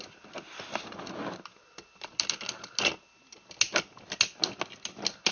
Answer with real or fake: real